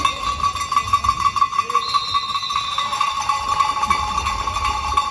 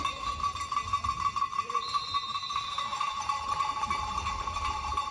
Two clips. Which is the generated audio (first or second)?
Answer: second